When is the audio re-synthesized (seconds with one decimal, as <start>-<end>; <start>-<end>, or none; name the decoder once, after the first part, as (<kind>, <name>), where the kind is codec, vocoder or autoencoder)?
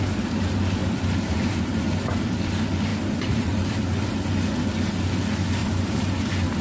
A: 0.8-1.6 (vocoder, BigVGAN v2); 2.9-3.7; 5.6-6.1